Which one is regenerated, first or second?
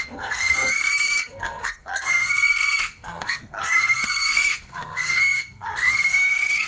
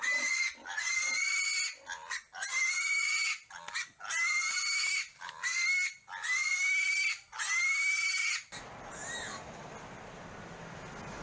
first